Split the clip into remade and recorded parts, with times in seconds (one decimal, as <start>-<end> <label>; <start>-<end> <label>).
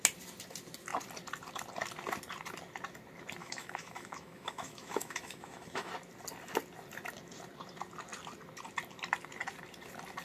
0.0-3.4 recorded; 3.4-5.9 remade; 5.9-10.2 recorded